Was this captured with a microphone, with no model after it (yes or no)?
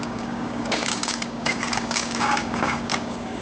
no